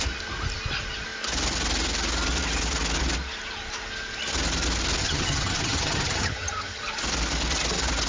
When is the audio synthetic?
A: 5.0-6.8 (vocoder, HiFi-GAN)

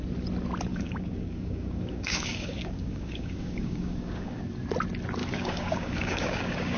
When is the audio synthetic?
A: 0.7-4.4 (codec, DAC); 5.2-6.8

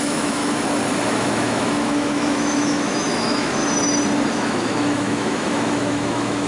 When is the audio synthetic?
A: 0.0-0.4 (autoencoder, DAC-VAE); 1.1-3.6; 4.3-6.5

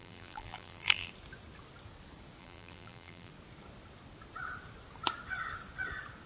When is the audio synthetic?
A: 0.0-1.1 (vocoder, BigVGAN v2); 2.4-3.3

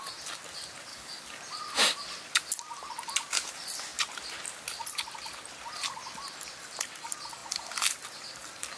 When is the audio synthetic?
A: 0.9-1.4 (codec, DAC)